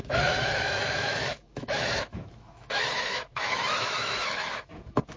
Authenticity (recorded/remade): remade